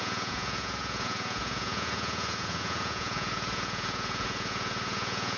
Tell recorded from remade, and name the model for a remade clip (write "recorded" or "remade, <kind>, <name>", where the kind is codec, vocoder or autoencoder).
remade, vocoder, Vocos